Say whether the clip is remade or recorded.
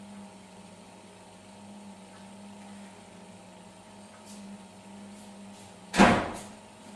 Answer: recorded